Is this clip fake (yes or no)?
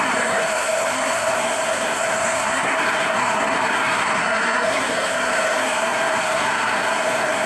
yes